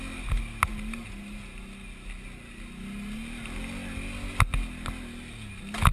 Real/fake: real